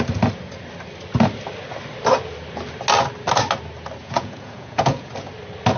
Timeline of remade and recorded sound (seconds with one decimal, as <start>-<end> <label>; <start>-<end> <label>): 0.0-4.0 recorded; 4.0-5.1 remade; 5.1-5.8 recorded